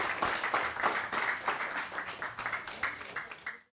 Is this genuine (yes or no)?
yes